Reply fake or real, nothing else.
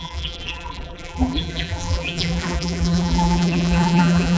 fake